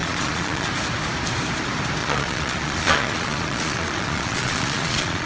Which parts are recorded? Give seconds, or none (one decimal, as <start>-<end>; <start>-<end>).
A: 0.7-2.0